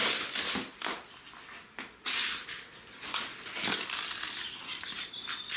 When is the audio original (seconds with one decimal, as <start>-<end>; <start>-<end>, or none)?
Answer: 0.0-5.6